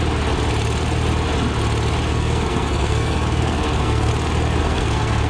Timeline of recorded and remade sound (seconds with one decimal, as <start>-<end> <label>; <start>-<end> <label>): 0.0-2.1 recorded; 2.1-4.1 remade; 4.1-4.6 recorded; 4.6-5.3 remade